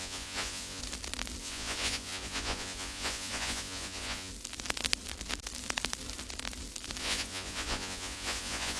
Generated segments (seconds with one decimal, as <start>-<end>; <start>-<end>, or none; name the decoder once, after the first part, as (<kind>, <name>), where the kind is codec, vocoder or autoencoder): 0.0-0.8 (vocoder, Vocos); 1.4-4.3; 7.0-8.8